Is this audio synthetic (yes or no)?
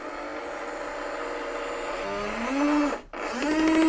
no